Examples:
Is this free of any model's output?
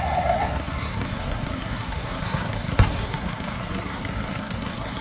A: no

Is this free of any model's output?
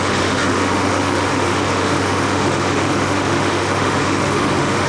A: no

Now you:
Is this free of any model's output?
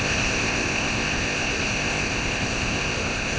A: no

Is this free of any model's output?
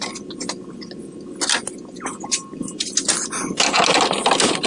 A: yes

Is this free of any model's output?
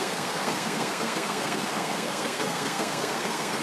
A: no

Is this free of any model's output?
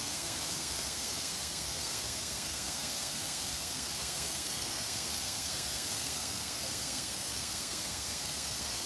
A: no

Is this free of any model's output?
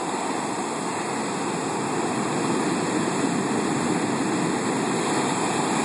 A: yes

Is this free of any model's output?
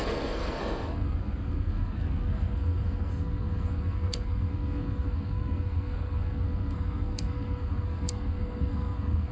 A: no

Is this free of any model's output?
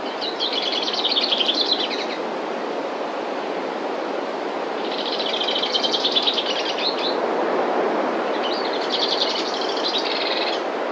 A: yes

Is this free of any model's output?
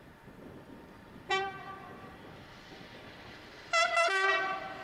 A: no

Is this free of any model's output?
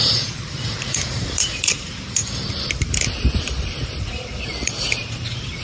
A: no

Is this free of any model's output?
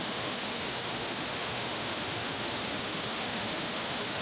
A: no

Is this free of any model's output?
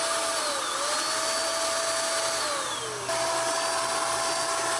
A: yes